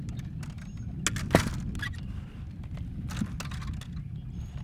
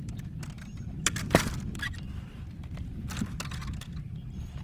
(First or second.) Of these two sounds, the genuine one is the first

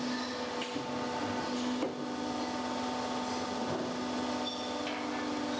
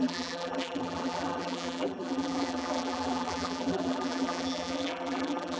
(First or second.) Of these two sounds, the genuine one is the first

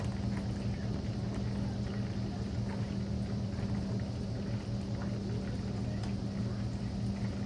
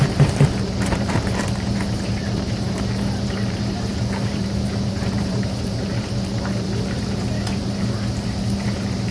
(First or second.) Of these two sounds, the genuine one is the first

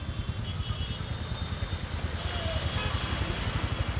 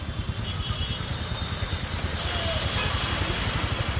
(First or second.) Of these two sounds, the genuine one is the first